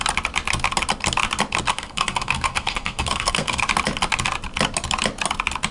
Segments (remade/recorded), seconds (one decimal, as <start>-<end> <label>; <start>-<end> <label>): 0.0-1.7 recorded; 1.7-3.6 remade; 3.6-5.7 recorded